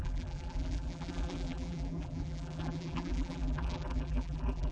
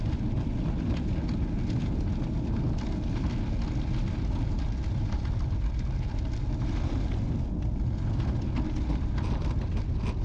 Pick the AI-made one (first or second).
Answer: first